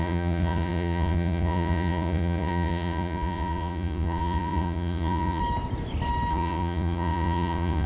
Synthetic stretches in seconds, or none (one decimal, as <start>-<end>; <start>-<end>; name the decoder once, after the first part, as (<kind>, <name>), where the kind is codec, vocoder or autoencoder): 0.0-5.4 (vocoder, Vocos); 6.3-7.9